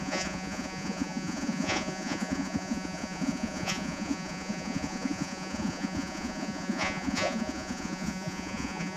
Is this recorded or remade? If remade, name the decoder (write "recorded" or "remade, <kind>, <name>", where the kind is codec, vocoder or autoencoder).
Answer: remade, vocoder, Vocos